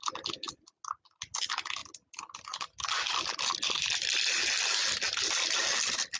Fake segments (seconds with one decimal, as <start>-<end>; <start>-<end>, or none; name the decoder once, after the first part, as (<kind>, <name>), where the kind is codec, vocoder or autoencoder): none